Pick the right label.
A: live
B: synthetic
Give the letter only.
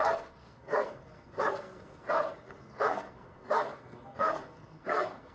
B